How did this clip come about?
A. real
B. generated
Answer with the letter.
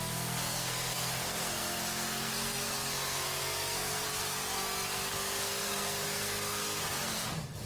B